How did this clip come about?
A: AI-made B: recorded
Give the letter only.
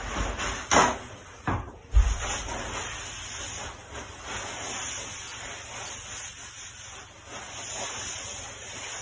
B